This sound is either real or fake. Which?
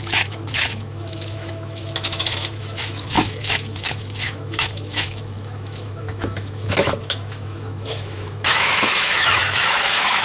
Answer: fake